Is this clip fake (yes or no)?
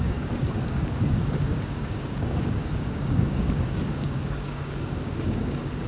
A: yes